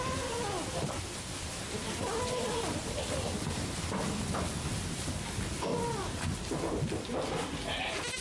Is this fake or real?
real